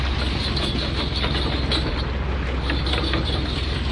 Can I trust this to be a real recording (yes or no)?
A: yes